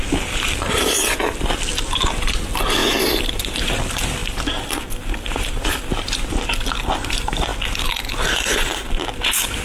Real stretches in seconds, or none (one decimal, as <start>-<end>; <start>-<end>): 0.0-4.2; 6.0-9.6

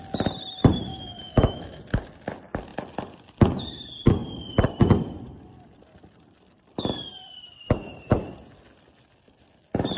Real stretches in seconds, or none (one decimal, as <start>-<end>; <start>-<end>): 0.0-0.9; 1.8-10.0

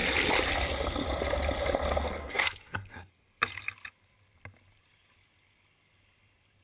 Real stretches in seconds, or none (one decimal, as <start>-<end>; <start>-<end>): 0.0-2.2; 3.1-6.6

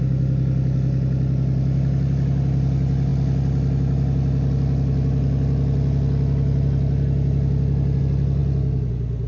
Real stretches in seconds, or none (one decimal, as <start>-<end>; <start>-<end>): 0.0-9.3

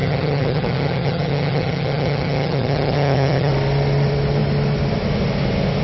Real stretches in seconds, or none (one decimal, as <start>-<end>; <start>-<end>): 3.5-5.8

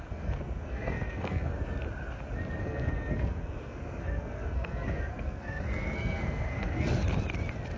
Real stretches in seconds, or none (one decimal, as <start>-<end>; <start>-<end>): 1.5-2.6; 6.9-7.8